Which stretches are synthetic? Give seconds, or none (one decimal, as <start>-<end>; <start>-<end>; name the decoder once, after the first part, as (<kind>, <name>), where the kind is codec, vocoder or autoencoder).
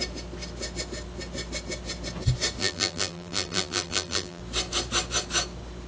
2.6-4.4 (vocoder, BigVGAN v2)